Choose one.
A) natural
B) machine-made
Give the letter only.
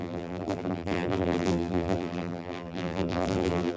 B